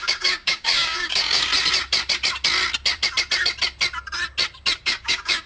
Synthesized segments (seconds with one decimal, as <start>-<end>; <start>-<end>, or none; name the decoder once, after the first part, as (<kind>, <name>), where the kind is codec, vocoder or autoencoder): 0.0-1.5 (codec, DAC); 4.8-5.5